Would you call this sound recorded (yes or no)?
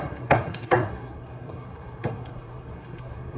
no